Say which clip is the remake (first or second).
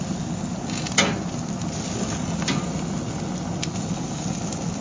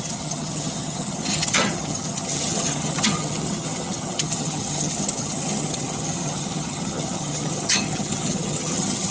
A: second